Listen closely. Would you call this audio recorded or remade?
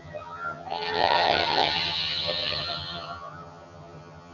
remade